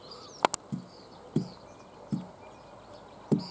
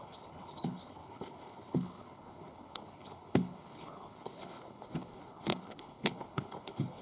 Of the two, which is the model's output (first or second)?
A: second